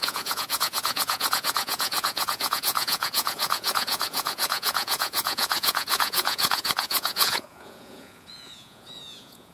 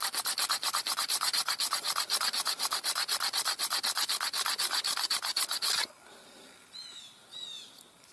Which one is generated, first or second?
first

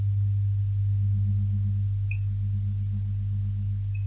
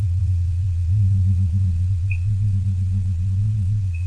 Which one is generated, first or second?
second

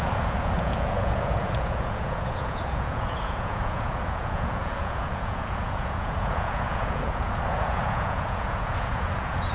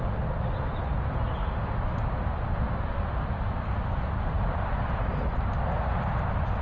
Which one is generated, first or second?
first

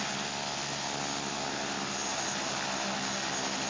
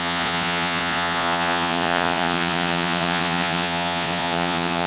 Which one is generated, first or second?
second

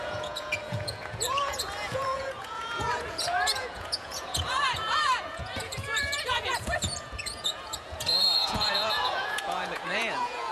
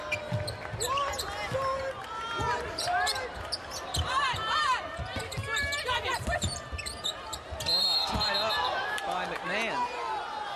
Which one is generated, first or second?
first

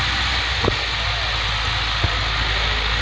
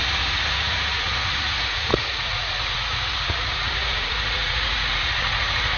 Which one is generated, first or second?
second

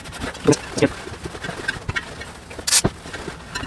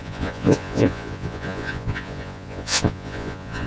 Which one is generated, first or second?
second